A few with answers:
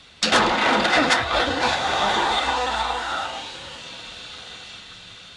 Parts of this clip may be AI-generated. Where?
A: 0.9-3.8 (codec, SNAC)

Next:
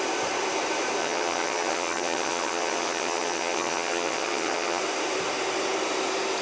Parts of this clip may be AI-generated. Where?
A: 1.0-4.8 (vocoder, HiFi-GAN)

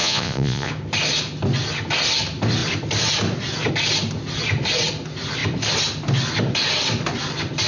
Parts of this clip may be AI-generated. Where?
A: 0.0-0.7 (vocoder, Vocos)

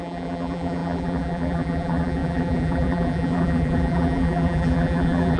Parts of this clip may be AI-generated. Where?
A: 0.0-5.4 (vocoder, BigVGAN v2)

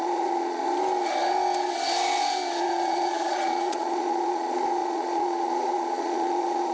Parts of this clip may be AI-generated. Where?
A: 0.0-0.6 (vocoder, Vocos); 2.6-6.7

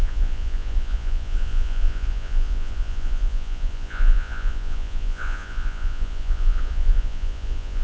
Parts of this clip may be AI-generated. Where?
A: 0.0-7.8 (vocoder, Vocos)

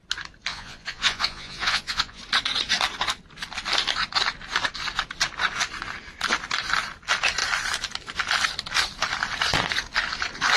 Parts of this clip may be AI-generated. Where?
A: 0.5-2.2 (vocoder, Vocos)